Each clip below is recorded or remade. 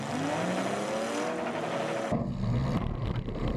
recorded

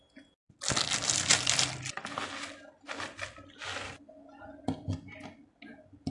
recorded